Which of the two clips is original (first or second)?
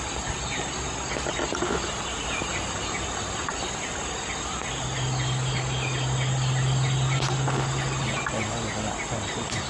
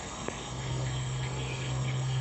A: first